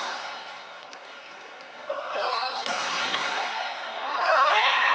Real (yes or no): no